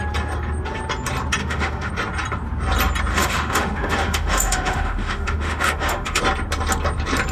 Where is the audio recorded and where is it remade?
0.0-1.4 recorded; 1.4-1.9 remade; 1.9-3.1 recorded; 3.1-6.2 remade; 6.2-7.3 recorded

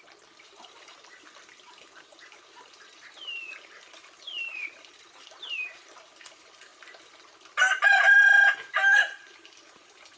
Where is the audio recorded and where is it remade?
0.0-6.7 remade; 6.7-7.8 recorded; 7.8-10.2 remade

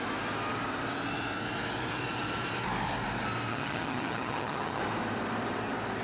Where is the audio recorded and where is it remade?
0.0-3.5 recorded; 3.5-4.8 remade; 4.8-6.0 recorded

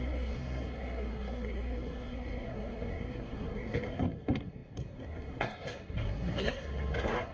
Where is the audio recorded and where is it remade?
0.0-7.3 remade

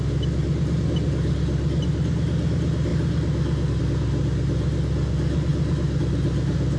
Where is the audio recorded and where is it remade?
0.0-6.8 recorded

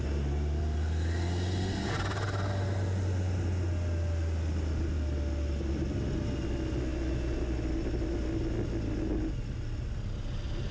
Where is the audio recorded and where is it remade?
0.0-10.7 recorded

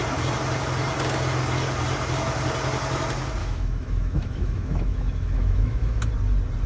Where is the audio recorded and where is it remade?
0.0-3.4 recorded; 3.4-6.1 remade; 6.1-6.7 recorded

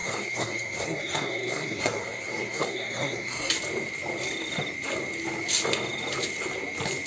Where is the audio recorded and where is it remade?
0.0-3.5 remade; 3.5-7.1 recorded